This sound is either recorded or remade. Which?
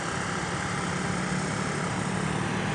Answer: recorded